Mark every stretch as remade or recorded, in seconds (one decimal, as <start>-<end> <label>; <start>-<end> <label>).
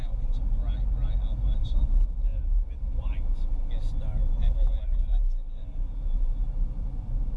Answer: 0.0-7.4 recorded